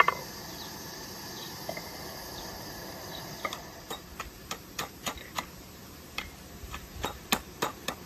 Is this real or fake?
fake